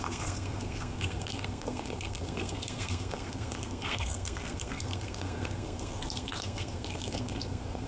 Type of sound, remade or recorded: remade